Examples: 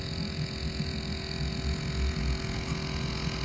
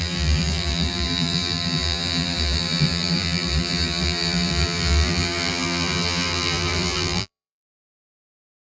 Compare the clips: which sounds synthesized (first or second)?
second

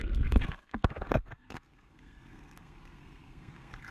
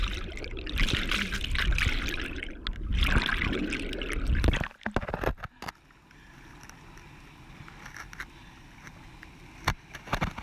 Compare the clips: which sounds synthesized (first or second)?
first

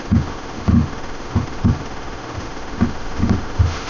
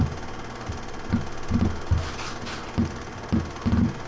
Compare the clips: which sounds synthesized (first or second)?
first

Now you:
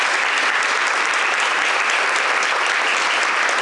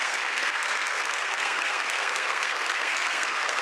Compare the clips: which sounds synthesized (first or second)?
second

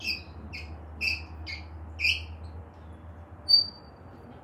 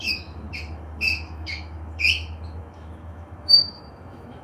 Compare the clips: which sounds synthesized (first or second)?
second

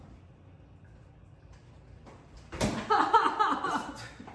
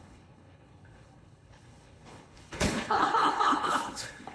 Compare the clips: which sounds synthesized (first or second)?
second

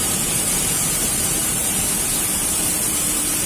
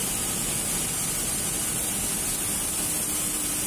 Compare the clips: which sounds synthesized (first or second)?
first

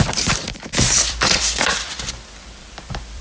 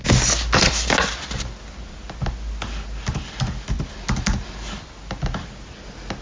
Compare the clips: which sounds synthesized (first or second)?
first